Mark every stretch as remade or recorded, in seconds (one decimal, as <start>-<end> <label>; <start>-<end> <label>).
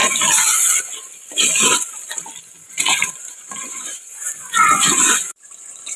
0.0-2.4 recorded; 2.4-6.0 remade